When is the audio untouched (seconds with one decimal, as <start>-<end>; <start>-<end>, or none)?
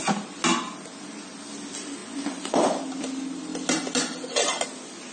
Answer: 0.0-2.0; 2.8-5.1